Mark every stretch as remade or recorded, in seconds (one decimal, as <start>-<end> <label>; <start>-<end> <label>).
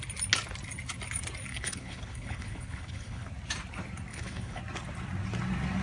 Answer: 0.0-1.5 recorded; 1.5-3.3 remade; 3.3-4.1 recorded; 4.1-4.6 remade; 4.6-5.8 recorded